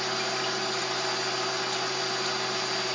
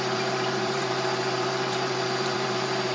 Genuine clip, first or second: first